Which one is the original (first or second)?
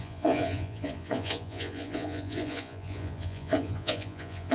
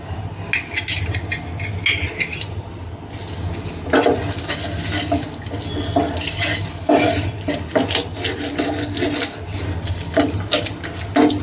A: second